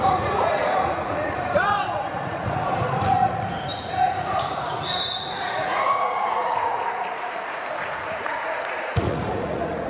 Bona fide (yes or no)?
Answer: no